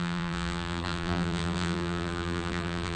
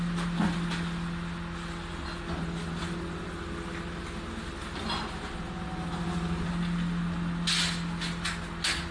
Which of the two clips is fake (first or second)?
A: first